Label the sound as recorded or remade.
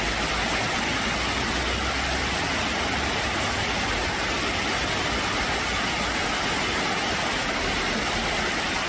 recorded